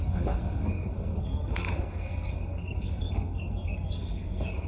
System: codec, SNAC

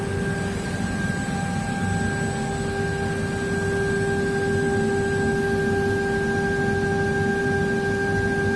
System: none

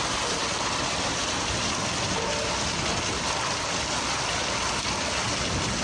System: none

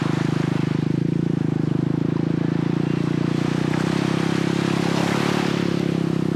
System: none